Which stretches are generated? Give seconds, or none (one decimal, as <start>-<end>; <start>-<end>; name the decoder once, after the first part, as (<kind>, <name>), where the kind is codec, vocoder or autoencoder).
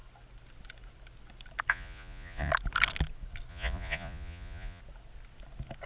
1.7-2.5 (vocoder, Vocos); 3.5-4.8